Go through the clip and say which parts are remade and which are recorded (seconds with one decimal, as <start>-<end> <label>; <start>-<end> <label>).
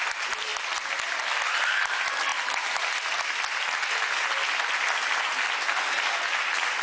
0.0-6.8 recorded